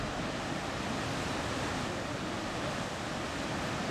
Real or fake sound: real